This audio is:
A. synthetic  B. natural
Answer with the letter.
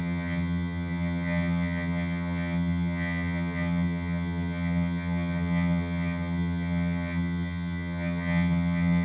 A